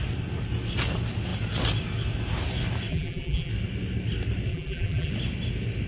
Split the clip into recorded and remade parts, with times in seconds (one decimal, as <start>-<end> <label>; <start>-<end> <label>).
0.0-2.9 recorded; 2.9-3.5 remade; 3.5-4.5 recorded; 4.5-5.1 remade; 5.1-5.9 recorded